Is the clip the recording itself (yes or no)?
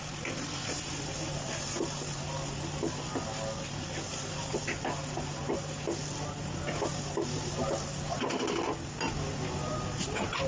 yes